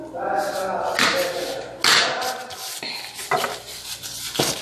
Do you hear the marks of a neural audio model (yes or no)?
no